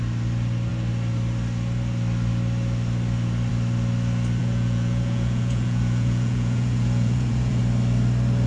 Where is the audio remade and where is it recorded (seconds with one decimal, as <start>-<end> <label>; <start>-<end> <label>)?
0.0-4.4 recorded; 4.4-7.6 remade; 7.6-8.5 recorded